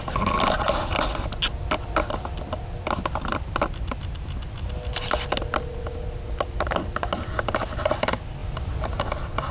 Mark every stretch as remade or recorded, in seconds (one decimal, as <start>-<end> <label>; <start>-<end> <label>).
0.0-8.4 recorded; 8.4-9.0 remade; 9.0-9.5 recorded